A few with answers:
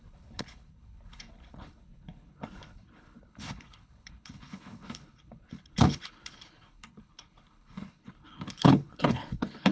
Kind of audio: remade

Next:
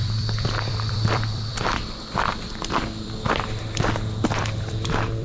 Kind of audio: remade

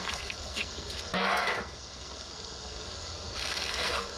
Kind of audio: remade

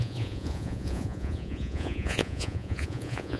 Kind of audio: remade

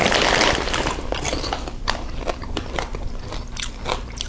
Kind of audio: remade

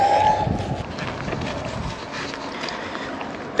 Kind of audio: recorded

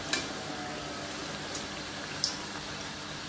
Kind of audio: recorded